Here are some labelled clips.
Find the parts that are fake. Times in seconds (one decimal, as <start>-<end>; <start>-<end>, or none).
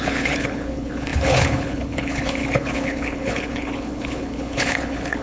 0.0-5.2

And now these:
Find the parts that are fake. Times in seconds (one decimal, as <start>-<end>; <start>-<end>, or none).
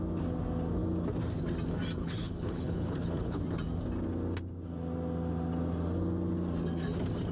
2.0-3.4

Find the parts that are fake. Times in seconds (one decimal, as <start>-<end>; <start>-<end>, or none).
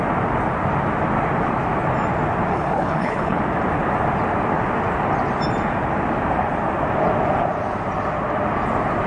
2.5-3.4